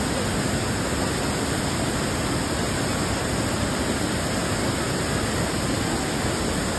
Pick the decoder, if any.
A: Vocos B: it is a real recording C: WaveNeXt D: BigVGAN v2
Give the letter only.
B